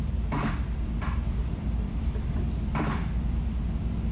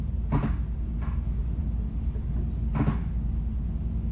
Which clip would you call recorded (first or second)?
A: second